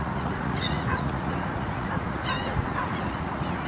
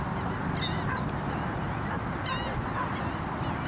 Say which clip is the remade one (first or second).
first